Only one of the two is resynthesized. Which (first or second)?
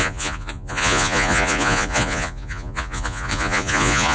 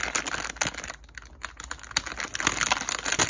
first